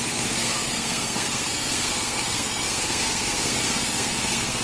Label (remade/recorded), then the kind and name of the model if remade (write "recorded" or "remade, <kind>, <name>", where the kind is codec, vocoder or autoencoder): remade, codec, SNAC